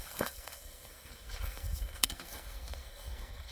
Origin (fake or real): fake